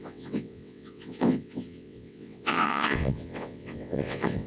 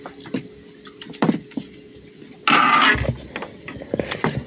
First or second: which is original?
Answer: second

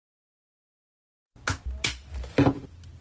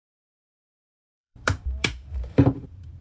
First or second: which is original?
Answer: first